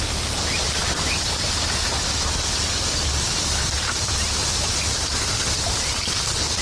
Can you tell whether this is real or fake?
real